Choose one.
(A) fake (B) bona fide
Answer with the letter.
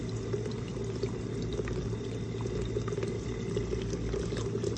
B